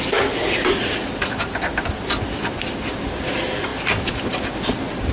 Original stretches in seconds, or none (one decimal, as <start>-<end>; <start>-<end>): 0.0-5.1